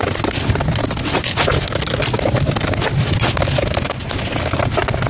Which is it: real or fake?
real